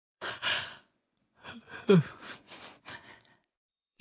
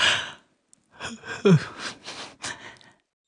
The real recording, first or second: second